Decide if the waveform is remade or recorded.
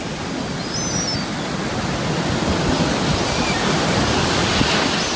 recorded